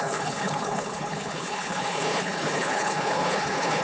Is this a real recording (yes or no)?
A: no